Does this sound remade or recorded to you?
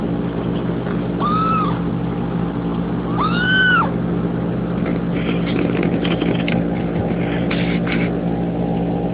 recorded